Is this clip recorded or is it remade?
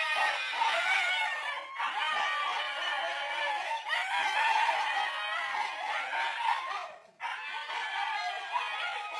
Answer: recorded